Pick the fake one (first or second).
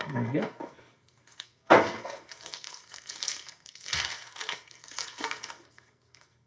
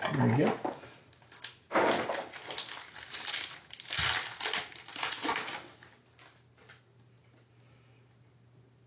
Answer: first